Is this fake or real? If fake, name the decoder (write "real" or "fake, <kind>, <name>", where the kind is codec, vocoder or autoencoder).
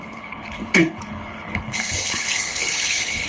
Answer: fake, codec, HILCodec